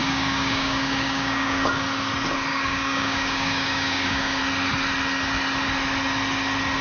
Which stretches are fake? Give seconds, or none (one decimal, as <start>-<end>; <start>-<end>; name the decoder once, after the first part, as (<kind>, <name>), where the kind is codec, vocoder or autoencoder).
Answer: 0.0-1.7 (codec, DAC); 2.5-4.4